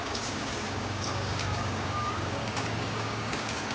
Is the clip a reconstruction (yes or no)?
yes